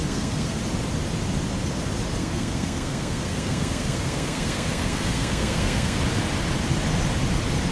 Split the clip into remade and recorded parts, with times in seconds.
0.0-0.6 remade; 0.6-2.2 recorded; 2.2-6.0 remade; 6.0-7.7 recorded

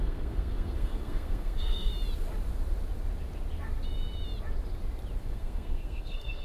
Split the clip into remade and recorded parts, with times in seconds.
0.0-1.9 remade; 1.9-5.2 recorded; 5.2-6.4 remade

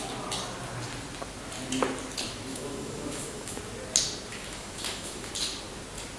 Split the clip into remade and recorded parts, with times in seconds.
0.0-2.5 recorded; 2.5-3.6 remade; 3.6-4.3 recorded; 4.3-5.3 remade; 5.3-6.2 recorded

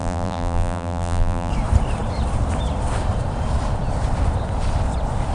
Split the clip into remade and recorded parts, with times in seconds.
0.0-1.5 remade; 1.5-5.3 recorded